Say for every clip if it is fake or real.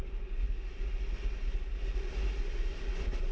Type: real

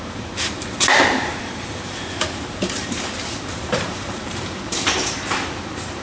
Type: fake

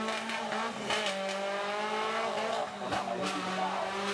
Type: real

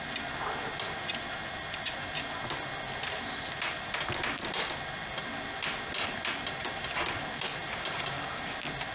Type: real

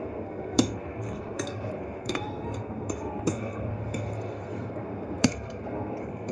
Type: fake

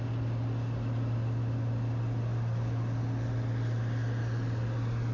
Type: real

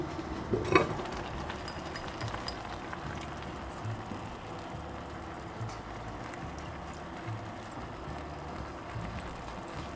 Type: real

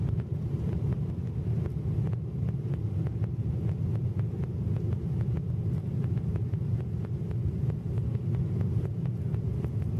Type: real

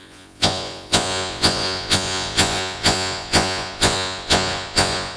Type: fake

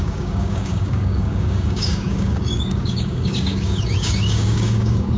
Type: fake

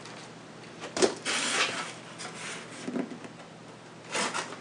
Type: real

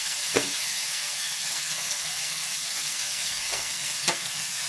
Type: fake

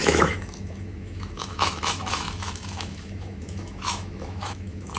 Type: fake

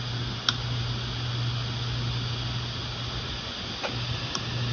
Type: real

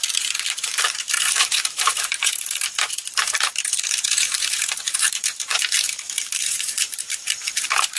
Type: fake